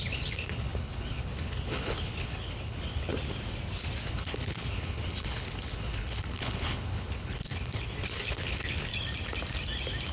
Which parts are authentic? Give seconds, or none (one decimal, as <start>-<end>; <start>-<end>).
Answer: 3.1-4.1; 8.9-10.1